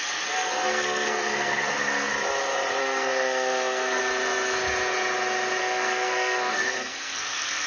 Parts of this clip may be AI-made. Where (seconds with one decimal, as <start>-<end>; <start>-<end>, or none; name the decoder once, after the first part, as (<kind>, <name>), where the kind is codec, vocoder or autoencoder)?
0.0-2.1 (codec, SNAC); 2.8-4.0; 5.6-7.7